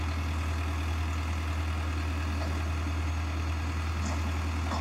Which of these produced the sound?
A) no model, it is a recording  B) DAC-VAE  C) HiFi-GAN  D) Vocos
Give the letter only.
A